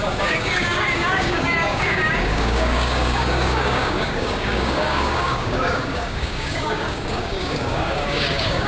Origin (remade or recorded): remade